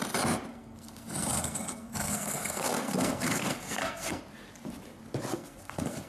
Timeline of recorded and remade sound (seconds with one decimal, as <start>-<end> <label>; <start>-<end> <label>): 0.0-0.5 recorded; 0.5-4.2 remade; 4.2-5.3 recorded; 5.3-6.1 remade